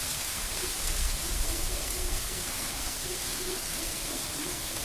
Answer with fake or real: fake